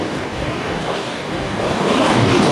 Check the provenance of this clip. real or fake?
fake